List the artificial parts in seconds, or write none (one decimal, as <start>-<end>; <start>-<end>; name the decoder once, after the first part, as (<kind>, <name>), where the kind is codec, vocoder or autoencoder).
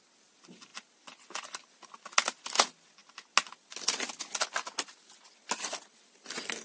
none